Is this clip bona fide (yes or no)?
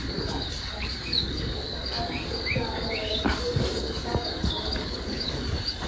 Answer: no